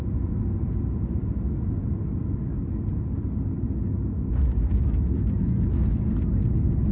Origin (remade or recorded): recorded